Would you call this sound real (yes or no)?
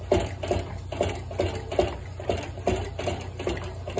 yes